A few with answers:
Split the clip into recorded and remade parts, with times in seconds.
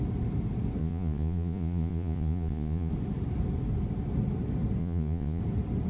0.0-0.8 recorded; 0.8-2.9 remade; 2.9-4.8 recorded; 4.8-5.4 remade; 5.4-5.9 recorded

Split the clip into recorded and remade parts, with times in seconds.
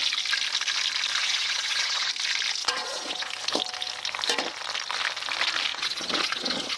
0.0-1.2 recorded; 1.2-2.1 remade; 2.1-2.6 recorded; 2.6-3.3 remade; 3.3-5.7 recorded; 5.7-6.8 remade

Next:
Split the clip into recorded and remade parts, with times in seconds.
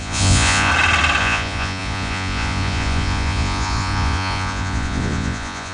0.0-0.7 remade; 0.7-1.2 recorded; 1.2-5.7 remade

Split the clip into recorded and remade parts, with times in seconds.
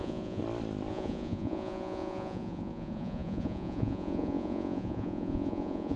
0.0-0.4 remade; 0.4-0.9 recorded; 0.9-6.0 remade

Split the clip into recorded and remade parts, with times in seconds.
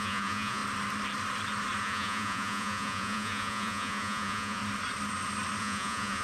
0.0-0.6 remade; 0.6-1.8 recorded; 1.8-4.6 remade; 4.6-5.6 recorded; 5.6-6.2 remade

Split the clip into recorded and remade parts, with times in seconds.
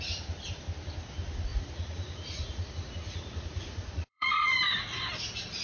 0.0-1.5 recorded; 1.5-4.6 remade; 4.6-5.6 recorded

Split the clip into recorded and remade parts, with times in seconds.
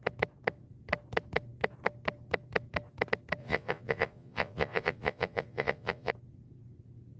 0.0-3.4 recorded; 3.4-6.1 remade; 6.1-7.2 recorded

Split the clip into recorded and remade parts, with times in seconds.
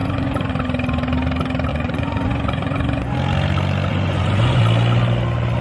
0.0-0.5 remade; 0.5-1.7 recorded; 1.7-3.1 remade; 3.1-3.9 recorded; 3.9-4.6 remade; 4.6-5.6 recorded